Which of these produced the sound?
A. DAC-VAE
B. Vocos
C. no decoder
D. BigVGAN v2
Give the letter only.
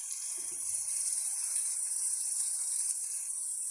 D